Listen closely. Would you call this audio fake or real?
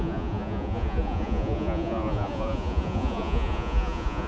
fake